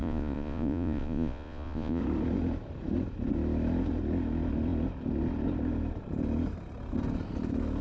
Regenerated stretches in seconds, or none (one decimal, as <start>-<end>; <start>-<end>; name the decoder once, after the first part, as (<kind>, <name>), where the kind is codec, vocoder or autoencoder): 0.0-2.0 (vocoder, Vocos)